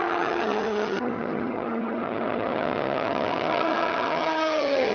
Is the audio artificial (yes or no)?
yes